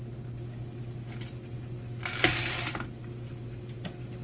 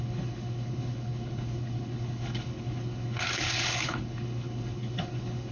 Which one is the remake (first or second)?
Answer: second